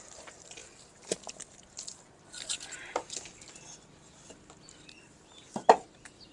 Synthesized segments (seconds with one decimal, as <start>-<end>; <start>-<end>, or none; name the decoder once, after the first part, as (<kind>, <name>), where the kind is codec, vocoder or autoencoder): none